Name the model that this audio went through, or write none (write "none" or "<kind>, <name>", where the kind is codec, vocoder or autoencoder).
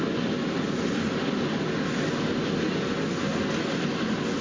none